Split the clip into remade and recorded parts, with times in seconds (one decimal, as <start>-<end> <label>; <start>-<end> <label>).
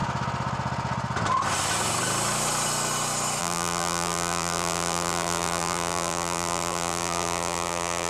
0.0-3.4 recorded; 3.4-8.1 remade